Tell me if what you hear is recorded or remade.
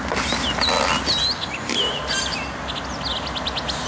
recorded